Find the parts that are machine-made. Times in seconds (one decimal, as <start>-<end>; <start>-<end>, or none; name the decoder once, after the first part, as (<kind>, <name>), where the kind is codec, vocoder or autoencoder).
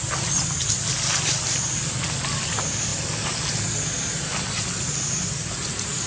none